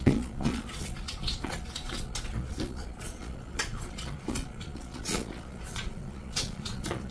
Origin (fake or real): fake